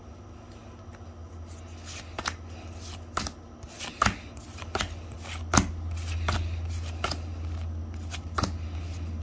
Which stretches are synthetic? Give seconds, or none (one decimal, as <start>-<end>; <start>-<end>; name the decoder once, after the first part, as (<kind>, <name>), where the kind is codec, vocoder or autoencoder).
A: none